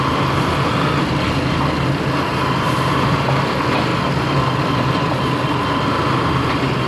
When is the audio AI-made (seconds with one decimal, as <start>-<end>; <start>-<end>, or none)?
none